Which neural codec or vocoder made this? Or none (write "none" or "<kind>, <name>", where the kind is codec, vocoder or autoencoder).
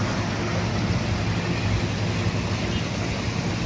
none